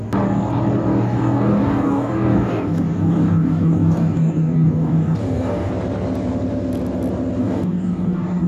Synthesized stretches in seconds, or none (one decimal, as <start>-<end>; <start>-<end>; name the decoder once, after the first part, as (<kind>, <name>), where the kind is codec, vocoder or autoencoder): 0.9-5.7 (codec, DAC); 7.4-8.5